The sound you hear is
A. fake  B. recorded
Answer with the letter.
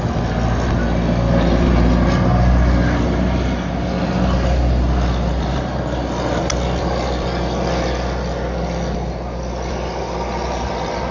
B